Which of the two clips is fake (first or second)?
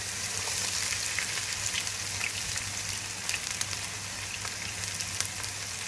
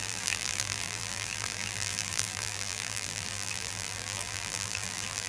second